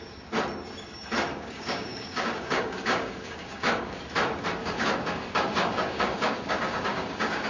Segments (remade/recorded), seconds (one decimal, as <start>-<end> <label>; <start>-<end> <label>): 0.0-1.3 recorded; 1.3-4.0 remade; 4.0-4.6 recorded; 4.6-7.5 remade